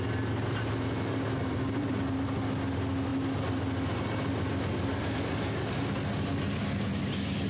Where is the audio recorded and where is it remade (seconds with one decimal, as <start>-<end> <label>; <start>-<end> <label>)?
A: 0.0-7.5 recorded